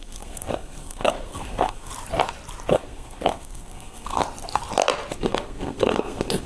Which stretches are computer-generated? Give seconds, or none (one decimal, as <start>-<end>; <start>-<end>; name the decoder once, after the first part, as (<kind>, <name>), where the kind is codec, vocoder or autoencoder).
0.0-1.9 (codec, SNAC); 2.7-4.2; 5.1-6.5